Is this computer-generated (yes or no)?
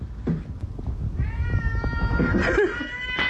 no